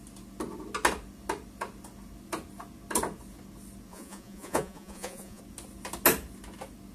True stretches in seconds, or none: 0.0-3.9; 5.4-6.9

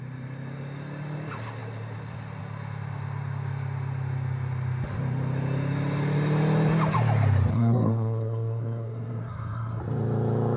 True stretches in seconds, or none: 0.0-7.5; 9.8-10.6

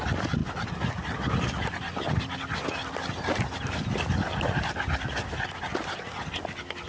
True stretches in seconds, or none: 0.0-6.9

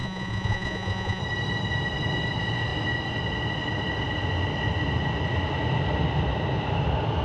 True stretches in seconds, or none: 1.2-7.2

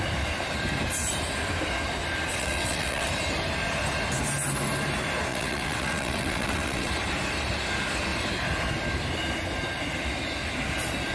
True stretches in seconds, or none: 0.0-2.3; 3.1-5.3; 6.9-11.1